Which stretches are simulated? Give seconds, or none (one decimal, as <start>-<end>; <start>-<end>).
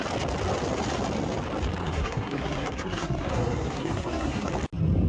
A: 1.8-4.5